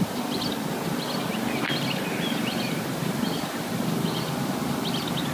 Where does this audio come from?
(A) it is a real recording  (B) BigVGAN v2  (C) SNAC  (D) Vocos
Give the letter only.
A